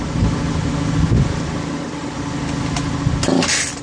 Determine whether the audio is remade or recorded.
recorded